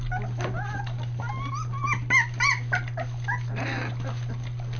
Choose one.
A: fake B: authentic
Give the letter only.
B